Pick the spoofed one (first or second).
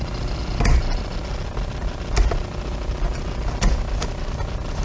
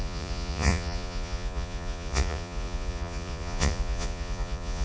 second